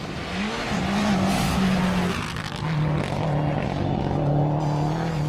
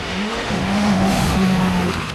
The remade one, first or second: second